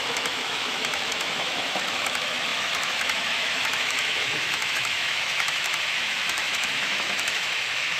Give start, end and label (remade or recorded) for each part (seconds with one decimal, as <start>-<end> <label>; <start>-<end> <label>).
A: 0.0-8.0 remade